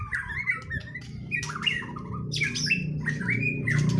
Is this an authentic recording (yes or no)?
yes